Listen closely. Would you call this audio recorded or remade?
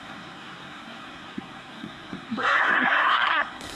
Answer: remade